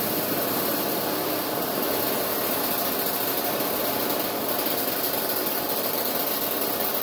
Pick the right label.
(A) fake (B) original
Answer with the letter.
B